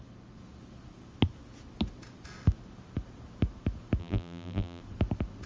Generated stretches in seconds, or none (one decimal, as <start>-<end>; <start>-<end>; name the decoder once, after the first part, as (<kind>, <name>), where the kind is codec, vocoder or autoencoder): 4.0-4.8 (vocoder, BigVGAN v2)